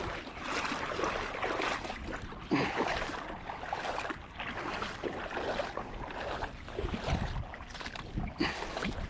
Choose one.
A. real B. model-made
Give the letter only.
A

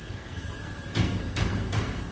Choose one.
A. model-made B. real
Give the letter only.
A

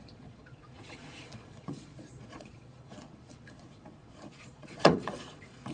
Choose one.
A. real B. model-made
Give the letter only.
B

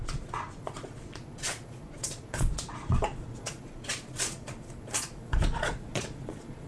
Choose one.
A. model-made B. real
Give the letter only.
A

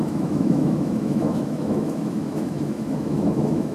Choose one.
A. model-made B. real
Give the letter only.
A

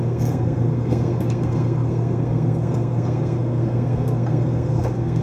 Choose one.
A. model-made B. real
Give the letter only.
A